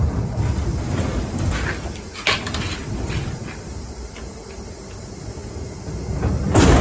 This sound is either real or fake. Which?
real